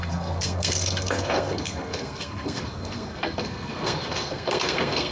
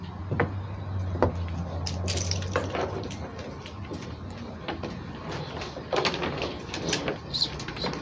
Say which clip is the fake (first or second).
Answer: first